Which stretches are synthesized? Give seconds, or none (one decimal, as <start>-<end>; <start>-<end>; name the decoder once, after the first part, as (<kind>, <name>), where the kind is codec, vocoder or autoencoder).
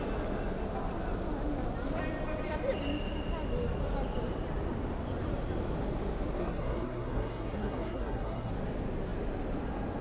6.4-8.5 (codec, SNAC)